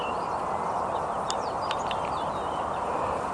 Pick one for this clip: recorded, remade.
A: recorded